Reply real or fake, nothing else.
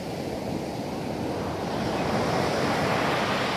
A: real